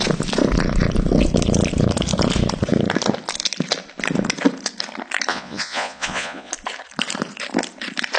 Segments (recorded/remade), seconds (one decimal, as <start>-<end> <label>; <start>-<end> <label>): 0.0-5.3 recorded; 5.3-6.5 remade; 6.5-8.2 recorded